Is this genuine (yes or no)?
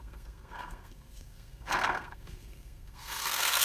no